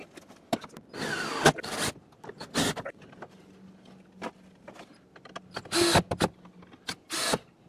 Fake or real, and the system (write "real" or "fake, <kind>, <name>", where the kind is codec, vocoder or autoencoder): real